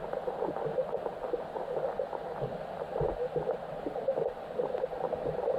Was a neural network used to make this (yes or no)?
no